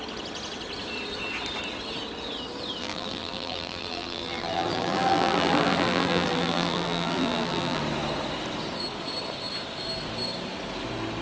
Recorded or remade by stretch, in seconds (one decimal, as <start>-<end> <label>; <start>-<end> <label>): 0.0-2.8 recorded; 2.8-7.8 remade; 7.8-11.2 recorded